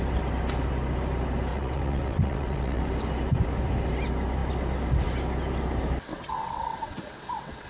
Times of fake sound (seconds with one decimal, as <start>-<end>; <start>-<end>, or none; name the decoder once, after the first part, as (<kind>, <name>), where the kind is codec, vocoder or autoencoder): 1.5-2.8 (vocoder, WaveNeXt); 6.1-7.7